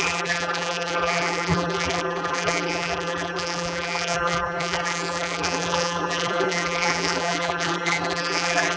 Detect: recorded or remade remade